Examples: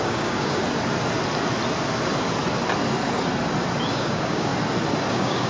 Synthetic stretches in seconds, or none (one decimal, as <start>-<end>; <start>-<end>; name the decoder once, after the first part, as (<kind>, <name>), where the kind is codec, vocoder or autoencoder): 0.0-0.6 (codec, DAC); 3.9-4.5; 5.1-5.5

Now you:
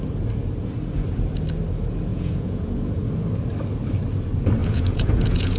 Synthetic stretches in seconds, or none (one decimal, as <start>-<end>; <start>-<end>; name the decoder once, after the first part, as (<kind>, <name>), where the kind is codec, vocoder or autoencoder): 2.1-3.1 (vocoder, Vocos); 4.6-5.6

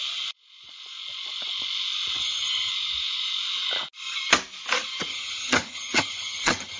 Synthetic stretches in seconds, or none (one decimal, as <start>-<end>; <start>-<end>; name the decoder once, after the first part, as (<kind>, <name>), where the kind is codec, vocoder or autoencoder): 2.2-2.7 (vocoder, HiFi-GAN); 5.1-6.8